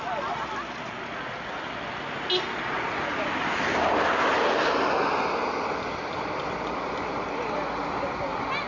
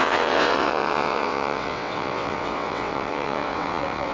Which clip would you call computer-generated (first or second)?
second